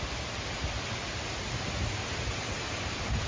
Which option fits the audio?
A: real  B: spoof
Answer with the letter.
A